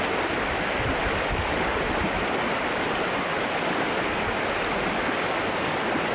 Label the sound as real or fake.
real